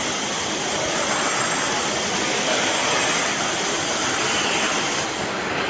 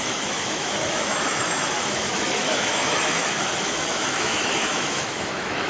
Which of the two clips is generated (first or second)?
second